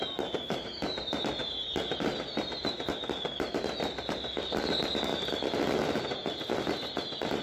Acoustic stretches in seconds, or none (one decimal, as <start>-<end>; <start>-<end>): 0.0-7.4